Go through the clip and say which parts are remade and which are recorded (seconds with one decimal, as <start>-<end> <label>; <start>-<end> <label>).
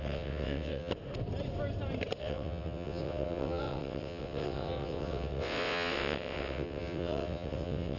0.0-0.9 remade; 0.9-2.2 recorded; 2.2-8.0 remade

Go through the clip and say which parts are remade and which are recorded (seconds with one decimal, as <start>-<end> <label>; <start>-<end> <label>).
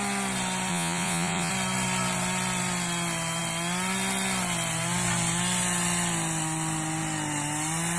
0.0-0.7 recorded; 0.7-1.5 remade; 1.5-8.0 recorded